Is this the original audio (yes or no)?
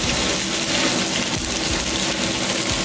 yes